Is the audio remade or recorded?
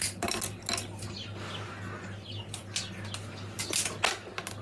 recorded